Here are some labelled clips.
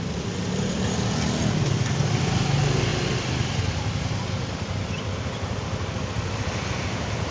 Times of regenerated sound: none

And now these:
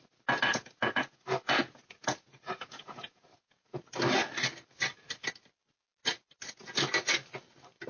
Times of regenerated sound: 0.5-3.8 (vocoder, Vocos)

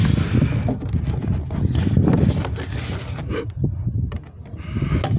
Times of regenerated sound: none

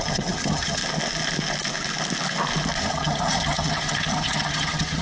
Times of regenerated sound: 0.0-0.8 (vocoder, HiFi-GAN); 2.8-5.0

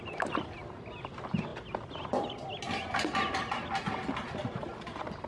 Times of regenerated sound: none